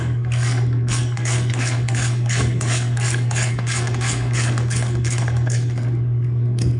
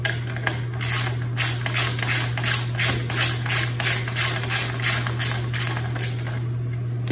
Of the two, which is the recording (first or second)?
second